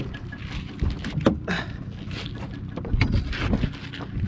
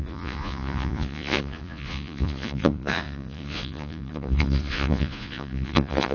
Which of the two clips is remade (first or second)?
second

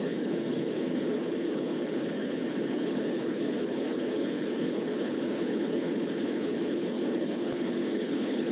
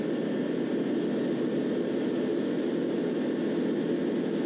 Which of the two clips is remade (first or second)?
first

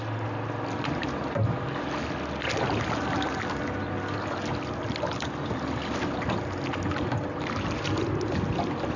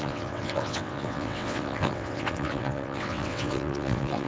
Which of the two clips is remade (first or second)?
second